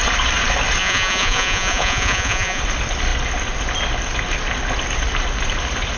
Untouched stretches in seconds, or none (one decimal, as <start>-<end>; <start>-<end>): 0.0-0.8; 2.6-6.0